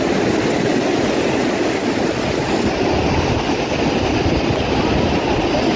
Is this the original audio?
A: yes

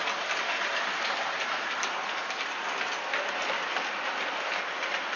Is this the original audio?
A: yes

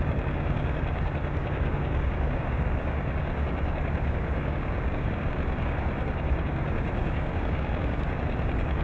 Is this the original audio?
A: no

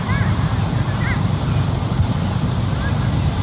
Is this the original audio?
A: yes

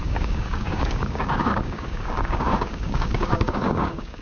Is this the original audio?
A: no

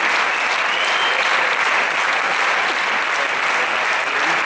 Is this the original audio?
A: yes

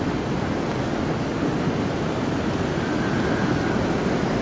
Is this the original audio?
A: yes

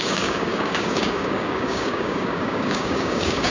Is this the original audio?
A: no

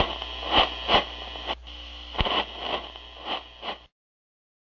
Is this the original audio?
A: yes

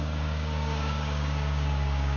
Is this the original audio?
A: no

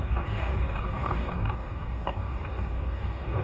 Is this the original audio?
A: no